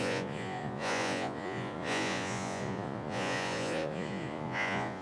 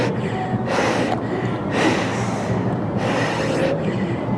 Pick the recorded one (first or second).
second